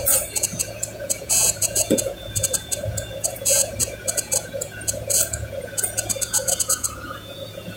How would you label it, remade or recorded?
remade